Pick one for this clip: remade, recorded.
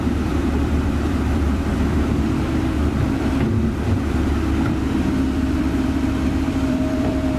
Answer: remade